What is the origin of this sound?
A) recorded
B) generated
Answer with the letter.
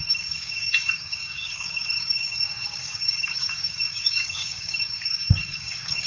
B